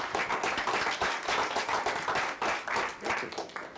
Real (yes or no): yes